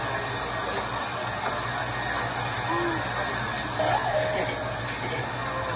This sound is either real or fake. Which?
real